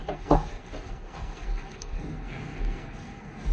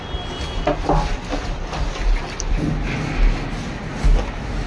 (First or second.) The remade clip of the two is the first